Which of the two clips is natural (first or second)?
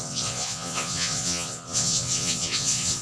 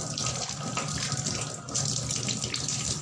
second